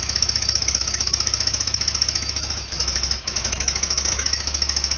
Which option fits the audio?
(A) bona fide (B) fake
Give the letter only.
B